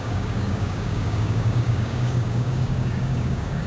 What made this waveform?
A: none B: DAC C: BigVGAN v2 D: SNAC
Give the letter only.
B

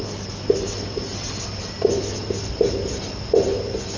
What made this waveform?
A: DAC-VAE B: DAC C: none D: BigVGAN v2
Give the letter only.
C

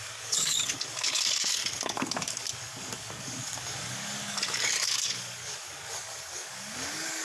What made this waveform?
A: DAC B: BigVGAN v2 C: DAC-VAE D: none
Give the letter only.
A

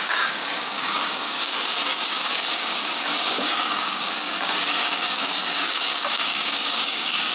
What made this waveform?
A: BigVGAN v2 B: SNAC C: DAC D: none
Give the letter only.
C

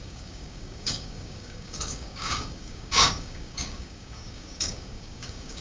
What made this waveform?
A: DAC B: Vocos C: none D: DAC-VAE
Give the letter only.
A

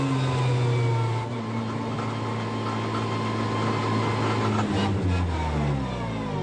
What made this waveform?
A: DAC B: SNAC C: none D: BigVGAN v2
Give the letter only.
C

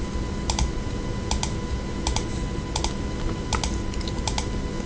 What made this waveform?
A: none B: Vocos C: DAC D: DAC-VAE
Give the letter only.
A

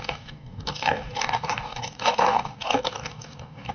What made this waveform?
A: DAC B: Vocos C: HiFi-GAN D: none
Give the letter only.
A